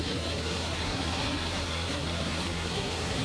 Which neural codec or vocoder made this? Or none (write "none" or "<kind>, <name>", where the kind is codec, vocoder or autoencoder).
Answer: codec, SNAC